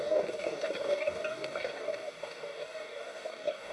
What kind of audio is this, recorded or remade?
remade